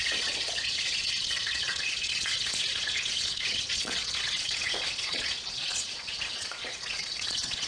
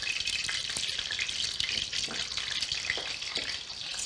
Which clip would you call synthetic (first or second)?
first